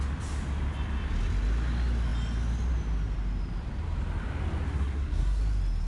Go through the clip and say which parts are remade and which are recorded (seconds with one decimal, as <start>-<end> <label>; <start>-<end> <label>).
0.0-4.7 recorded; 4.7-5.4 remade; 5.4-5.9 recorded